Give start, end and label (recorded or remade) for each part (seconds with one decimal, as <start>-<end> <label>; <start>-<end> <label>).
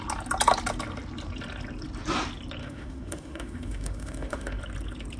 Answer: 0.0-2.6 recorded; 2.6-4.6 remade; 4.6-5.2 recorded